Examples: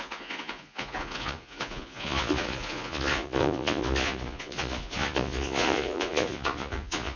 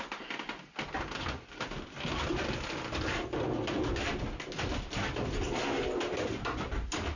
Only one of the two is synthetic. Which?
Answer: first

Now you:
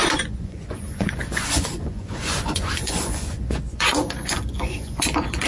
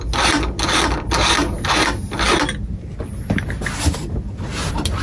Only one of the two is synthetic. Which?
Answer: first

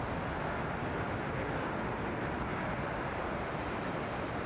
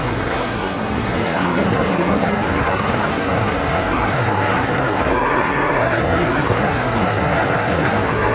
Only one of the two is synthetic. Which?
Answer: second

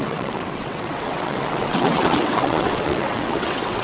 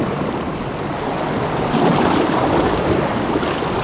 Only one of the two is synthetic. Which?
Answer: first